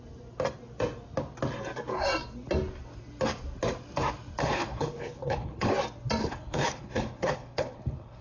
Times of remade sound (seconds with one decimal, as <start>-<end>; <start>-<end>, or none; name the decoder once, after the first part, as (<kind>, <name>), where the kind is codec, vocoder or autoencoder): 4.4-5.7 (codec, HILCodec); 6.2-8.2